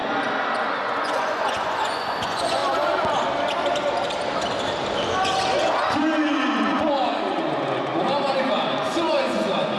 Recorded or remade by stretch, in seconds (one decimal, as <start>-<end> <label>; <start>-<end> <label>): 0.0-0.8 recorded; 0.8-2.6 remade; 2.6-6.1 recorded; 6.1-7.9 remade; 7.9-8.9 recorded; 8.9-9.8 remade